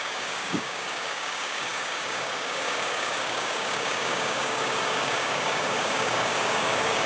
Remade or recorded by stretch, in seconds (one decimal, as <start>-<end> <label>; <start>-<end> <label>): 0.0-7.1 remade